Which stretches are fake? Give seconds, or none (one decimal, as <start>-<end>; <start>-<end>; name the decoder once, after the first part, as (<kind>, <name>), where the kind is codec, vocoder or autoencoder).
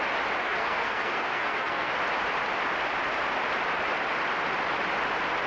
0.4-1.9 (codec, SNAC)